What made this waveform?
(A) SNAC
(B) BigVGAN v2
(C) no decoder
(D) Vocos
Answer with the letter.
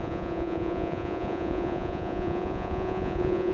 D